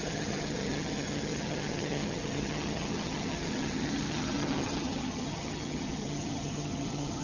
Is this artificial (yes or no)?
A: yes